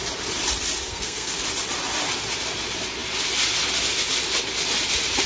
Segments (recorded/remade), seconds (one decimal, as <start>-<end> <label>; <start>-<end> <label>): 0.0-0.9 recorded; 0.9-1.4 remade; 1.4-5.3 recorded